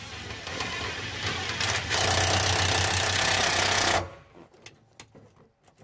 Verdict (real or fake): real